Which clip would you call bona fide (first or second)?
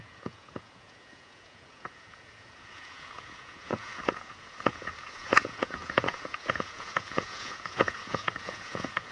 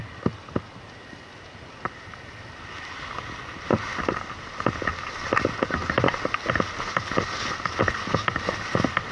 second